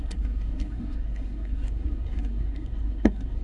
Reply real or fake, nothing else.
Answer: fake